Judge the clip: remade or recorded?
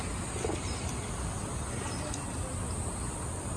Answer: recorded